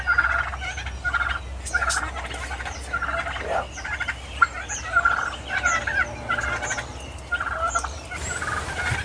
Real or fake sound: real